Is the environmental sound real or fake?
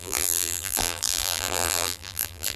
fake